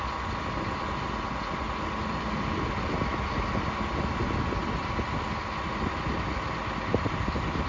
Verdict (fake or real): real